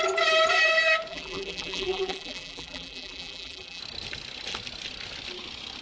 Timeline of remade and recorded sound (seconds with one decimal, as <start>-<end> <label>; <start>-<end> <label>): 0.0-1.1 recorded; 1.1-3.8 remade; 3.8-5.8 recorded